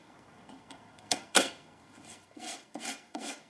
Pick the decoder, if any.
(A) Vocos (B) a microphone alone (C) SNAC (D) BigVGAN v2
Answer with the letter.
C